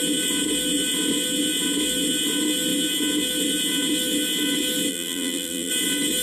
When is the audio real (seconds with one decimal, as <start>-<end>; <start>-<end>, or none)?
0.0-4.9; 5.7-6.2